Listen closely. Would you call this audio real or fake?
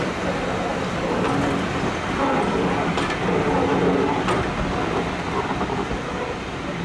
real